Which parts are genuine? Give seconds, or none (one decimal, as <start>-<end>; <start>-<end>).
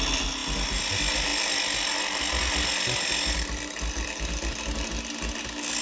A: 0.0-5.8